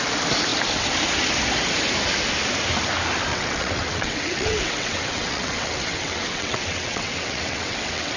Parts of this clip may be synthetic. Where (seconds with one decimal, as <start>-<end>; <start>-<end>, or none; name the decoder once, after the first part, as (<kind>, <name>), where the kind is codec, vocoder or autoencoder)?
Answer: 3.3-8.2 (vocoder, WaveNeXt)